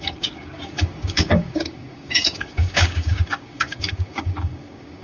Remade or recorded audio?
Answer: remade